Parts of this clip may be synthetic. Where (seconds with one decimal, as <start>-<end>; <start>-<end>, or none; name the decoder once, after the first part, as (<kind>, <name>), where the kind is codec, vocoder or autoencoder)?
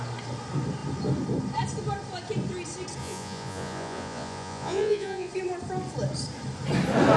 3.0-5.3 (vocoder, Vocos)